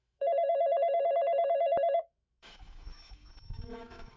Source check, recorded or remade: remade